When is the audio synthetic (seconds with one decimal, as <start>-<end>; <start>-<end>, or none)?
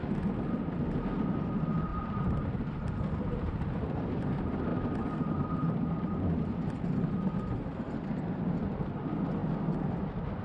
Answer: 1.9-4.1